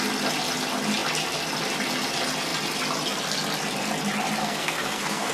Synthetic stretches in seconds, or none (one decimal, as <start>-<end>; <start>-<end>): 4.4-5.3